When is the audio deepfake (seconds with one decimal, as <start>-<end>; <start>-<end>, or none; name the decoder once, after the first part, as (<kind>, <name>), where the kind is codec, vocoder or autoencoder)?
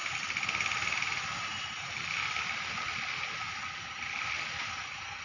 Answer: none